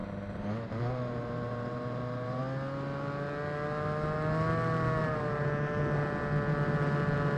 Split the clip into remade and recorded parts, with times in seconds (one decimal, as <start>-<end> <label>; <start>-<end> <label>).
0.0-2.4 remade; 2.4-5.0 recorded; 5.0-5.8 remade; 5.8-7.4 recorded